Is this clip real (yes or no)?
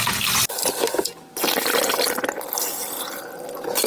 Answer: yes